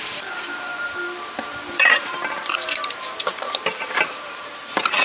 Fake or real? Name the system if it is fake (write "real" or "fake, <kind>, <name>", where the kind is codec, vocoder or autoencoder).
fake, vocoder, BigVGAN v2